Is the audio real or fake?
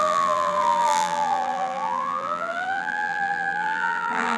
fake